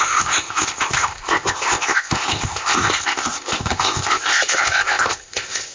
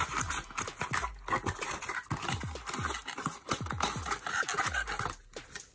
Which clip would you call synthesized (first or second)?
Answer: first